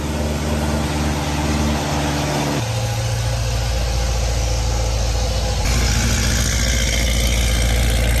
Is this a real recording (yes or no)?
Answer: yes